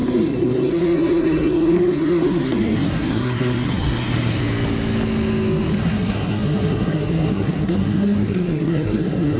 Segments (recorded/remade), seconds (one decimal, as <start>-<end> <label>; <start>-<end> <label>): 0.0-4.4 remade; 4.4-5.8 recorded; 5.8-9.4 remade